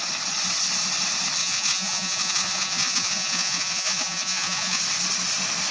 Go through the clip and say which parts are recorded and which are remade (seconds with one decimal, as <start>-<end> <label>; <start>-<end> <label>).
0.0-1.4 recorded; 1.4-4.8 remade; 4.8-5.7 recorded